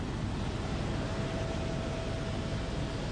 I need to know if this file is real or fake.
real